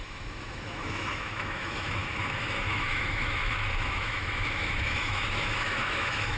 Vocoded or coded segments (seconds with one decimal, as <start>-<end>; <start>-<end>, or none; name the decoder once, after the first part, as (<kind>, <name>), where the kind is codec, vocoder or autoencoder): 0.0-6.4 (autoencoder, DAC-VAE)